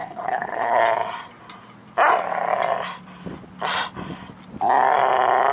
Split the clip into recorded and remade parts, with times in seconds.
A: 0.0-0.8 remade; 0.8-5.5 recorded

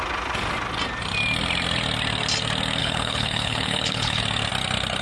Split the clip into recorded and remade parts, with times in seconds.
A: 0.0-2.8 recorded; 2.8-4.2 remade; 4.2-5.0 recorded

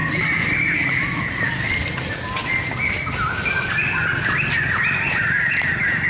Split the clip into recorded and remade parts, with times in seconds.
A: 0.0-6.1 recorded

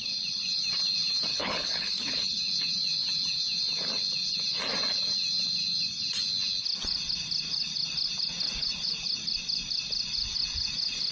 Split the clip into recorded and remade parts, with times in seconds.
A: 0.0-1.3 recorded; 1.3-2.4 remade; 2.4-11.1 recorded

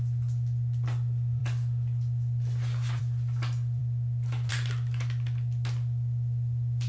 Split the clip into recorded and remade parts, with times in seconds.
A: 0.0-6.9 recorded